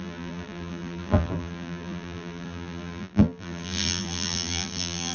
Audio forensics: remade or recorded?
remade